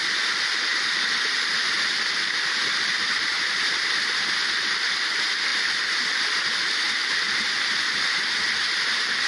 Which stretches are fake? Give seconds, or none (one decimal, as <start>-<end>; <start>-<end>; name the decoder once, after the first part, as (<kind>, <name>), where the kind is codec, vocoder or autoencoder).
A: 0.7-3.4 (vocoder, BigVGAN v2); 5.5-6.2; 7.0-8.0